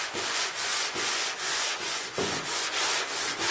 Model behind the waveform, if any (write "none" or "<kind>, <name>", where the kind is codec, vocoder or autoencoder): vocoder, Vocos